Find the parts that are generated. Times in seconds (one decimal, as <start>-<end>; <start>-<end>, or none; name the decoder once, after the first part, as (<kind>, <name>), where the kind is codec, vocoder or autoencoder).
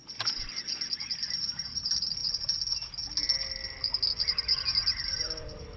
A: none